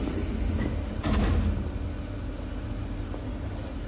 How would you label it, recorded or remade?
recorded